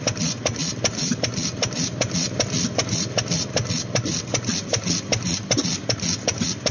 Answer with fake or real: real